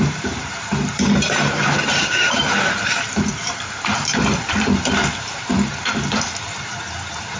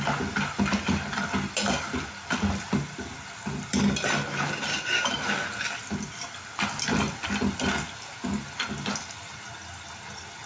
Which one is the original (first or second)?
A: second